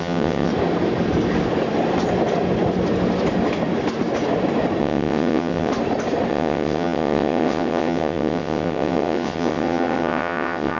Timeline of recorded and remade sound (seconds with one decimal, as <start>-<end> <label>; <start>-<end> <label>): 0.0-0.5 remade; 0.5-4.8 recorded; 4.8-5.7 remade; 5.7-6.3 recorded; 6.3-10.8 remade